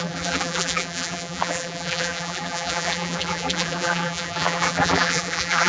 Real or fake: fake